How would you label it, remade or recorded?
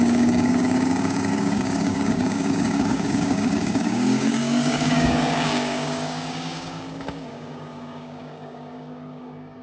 remade